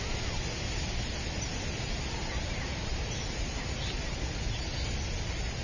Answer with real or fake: real